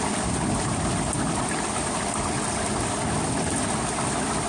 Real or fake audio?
real